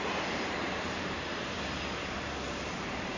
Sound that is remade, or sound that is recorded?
remade